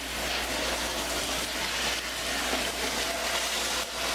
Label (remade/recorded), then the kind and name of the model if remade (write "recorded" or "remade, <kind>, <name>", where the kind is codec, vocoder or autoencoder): recorded